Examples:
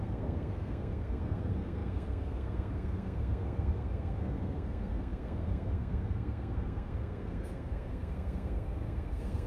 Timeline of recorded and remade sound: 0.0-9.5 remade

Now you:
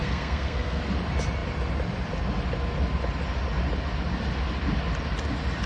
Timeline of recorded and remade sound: 0.0-0.8 remade; 0.8-5.7 recorded

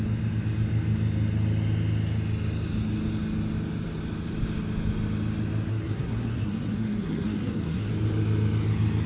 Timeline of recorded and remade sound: 0.0-5.7 recorded; 5.7-7.9 remade; 7.9-9.1 recorded

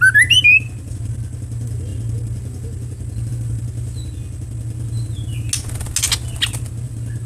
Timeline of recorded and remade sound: 0.0-7.3 recorded

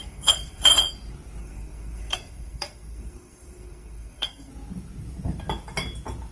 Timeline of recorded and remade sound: 0.0-0.6 remade; 0.6-1.4 recorded; 1.4-4.5 remade; 4.5-6.3 recorded

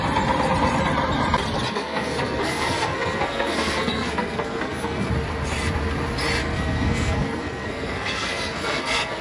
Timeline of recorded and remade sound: 0.0-1.7 recorded; 1.7-5.1 remade; 5.1-6.4 recorded; 6.4-9.2 remade

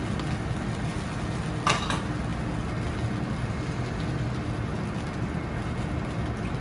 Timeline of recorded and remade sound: 0.0-6.6 recorded